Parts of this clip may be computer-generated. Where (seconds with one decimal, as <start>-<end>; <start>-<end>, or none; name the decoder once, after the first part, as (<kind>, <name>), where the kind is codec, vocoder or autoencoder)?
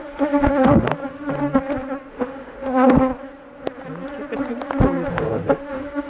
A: 0.0-0.9 (autoencoder, DAC-VAE); 2.1-3.1; 5.1-6.1